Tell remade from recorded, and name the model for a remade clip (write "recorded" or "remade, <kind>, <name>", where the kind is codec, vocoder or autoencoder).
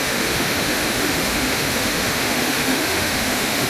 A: remade, autoencoder, DAC-VAE